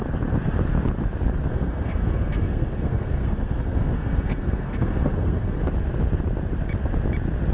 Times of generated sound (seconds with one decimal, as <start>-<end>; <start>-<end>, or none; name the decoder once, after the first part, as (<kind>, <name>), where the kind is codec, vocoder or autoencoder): 1.5-5.6 (codec, SNAC)

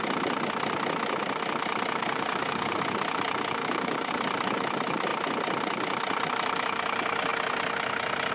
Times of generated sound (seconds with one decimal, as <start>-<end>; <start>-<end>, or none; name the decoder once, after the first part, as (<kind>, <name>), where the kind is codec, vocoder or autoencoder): 2.0-2.8 (codec, DAC); 3.6-4.1

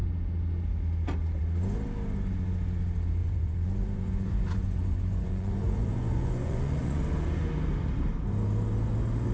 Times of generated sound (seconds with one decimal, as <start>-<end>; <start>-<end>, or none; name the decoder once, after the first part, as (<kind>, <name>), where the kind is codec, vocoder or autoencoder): 3.2-7.0 (vocoder, Vocos)

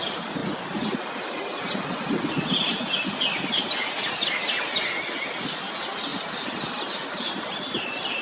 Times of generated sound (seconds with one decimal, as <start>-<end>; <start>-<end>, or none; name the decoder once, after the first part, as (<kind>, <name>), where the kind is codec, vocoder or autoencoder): none

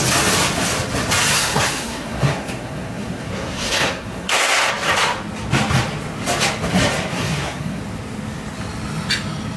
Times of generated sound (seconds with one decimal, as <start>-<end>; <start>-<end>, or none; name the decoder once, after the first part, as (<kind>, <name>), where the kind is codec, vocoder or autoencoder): 1.3-4.7 (codec, SNAC); 7.1-7.8